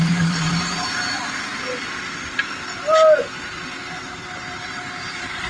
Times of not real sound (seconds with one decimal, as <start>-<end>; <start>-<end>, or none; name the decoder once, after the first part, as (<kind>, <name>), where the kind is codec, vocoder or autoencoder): 0.0-1.5 (vocoder, BigVGAN v2); 3.9-5.5